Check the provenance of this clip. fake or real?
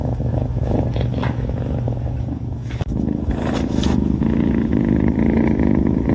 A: fake